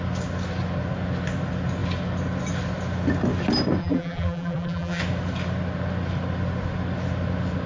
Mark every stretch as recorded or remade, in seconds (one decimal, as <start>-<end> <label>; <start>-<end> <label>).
0.0-3.8 recorded; 3.8-5.0 remade; 5.0-7.7 recorded